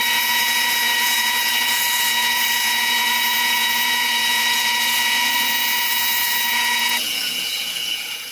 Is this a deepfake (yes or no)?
yes